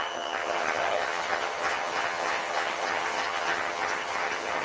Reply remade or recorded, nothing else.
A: remade